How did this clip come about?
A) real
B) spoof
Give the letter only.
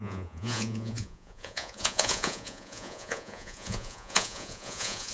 B